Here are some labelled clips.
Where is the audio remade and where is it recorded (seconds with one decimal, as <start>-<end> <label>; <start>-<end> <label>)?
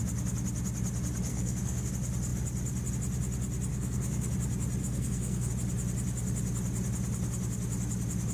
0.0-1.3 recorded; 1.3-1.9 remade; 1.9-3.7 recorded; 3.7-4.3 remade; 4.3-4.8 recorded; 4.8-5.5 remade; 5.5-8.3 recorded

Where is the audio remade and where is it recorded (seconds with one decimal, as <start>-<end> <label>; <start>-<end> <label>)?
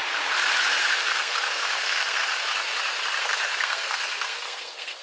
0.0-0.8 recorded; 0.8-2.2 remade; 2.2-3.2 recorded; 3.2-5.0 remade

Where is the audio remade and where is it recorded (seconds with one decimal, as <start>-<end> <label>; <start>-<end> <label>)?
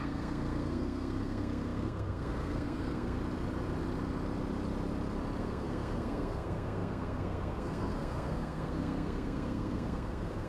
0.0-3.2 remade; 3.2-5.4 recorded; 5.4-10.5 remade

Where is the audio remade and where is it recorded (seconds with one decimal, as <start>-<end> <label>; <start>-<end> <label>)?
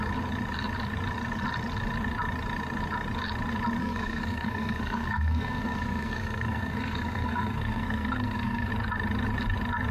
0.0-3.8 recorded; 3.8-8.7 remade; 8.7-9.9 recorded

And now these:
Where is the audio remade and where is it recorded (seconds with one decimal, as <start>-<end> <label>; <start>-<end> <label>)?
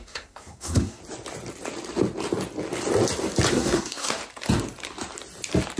0.0-1.0 remade; 1.0-3.5 recorded; 3.5-4.2 remade; 4.2-5.8 recorded